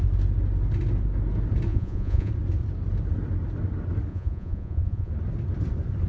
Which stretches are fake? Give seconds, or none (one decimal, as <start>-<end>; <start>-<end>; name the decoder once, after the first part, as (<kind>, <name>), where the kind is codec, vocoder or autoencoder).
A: 1.7-2.3 (vocoder, Vocos); 4.1-5.1